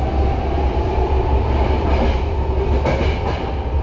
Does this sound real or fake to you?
real